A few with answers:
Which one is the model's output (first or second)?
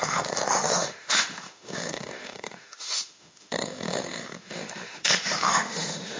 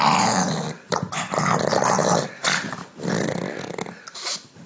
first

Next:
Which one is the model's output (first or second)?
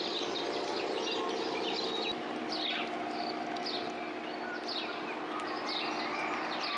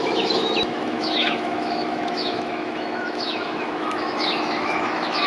second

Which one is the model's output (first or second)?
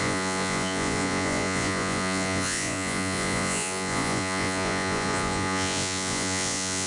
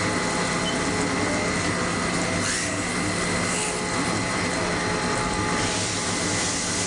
first